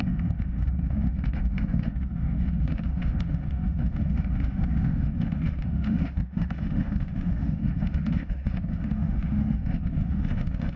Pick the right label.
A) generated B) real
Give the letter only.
A